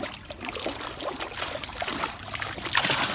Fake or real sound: real